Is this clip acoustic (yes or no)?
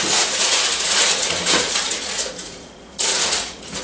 no